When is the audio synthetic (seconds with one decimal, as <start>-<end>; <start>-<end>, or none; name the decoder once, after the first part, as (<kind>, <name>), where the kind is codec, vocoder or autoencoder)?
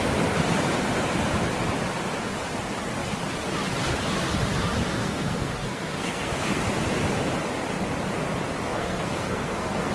5.0-6.6 (codec, SNAC); 8.7-9.9